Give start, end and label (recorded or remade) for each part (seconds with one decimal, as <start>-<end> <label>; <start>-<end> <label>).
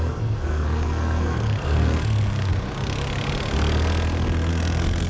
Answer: 0.0-2.5 remade; 2.5-4.5 recorded; 4.5-5.1 remade